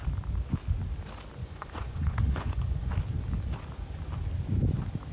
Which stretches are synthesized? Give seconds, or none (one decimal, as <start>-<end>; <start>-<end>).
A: 1.4-2.9